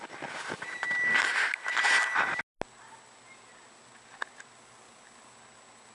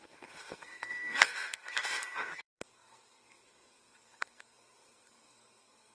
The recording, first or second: first